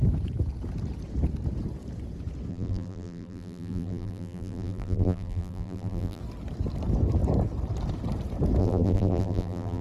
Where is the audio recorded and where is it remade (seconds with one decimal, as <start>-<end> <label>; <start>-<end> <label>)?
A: 0.0-2.5 recorded; 2.5-6.2 remade; 6.2-8.6 recorded; 8.6-9.8 remade